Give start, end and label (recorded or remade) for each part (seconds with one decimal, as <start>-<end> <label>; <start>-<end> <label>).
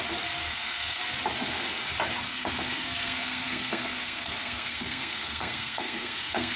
0.0-0.4 recorded; 0.4-1.0 remade; 1.0-2.3 recorded; 2.3-6.6 remade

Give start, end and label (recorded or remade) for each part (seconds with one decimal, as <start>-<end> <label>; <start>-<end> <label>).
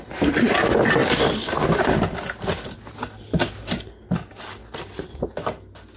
0.0-6.0 recorded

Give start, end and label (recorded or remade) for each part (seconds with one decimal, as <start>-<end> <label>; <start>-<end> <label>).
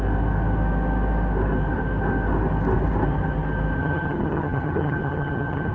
0.0-3.8 recorded; 3.8-5.7 remade